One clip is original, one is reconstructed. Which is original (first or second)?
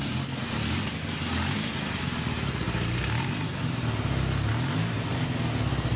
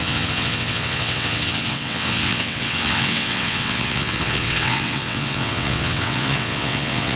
first